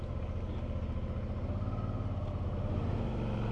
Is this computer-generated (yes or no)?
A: no